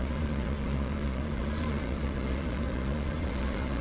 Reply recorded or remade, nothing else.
remade